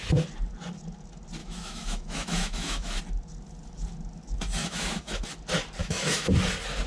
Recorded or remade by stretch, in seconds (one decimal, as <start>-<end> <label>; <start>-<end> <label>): 0.0-1.4 recorded; 1.4-3.0 remade; 3.0-4.6 recorded; 4.6-5.2 remade; 5.2-5.8 recorded; 5.8-6.3 remade; 6.3-6.9 recorded